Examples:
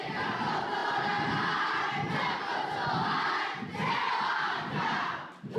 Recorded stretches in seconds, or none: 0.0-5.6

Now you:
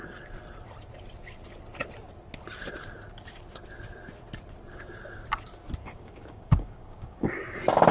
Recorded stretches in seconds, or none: 0.0-5.8; 7.5-7.9